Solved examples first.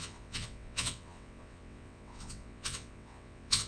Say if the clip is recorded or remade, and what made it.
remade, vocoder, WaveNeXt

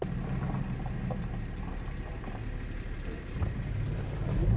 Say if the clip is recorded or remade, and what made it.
recorded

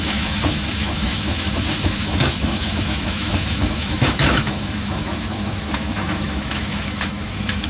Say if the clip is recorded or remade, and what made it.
remade, autoencoder, DAC-VAE